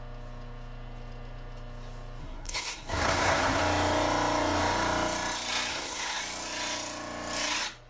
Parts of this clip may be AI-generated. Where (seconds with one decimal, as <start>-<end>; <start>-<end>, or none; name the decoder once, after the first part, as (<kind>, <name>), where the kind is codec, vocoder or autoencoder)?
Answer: 2.2-3.6 (codec, SNAC); 5.7-6.2